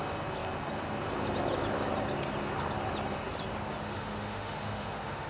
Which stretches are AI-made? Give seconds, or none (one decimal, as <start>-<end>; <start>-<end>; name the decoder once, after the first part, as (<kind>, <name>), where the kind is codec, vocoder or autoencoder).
3.8-5.3 (autoencoder, DAC-VAE)